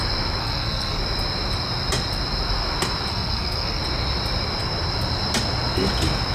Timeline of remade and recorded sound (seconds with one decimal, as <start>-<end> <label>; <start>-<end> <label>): 0.0-0.4 recorded; 0.4-1.0 remade; 1.0-3.1 recorded; 3.1-3.8 remade; 3.8-6.3 recorded